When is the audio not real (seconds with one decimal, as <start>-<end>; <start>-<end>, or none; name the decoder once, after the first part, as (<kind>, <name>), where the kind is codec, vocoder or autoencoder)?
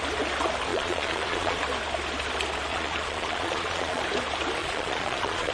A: 0.7-1.6 (vocoder, Vocos); 2.7-4.0; 4.6-5.5